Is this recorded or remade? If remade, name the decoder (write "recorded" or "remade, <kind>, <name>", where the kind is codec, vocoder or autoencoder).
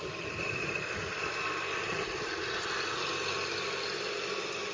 recorded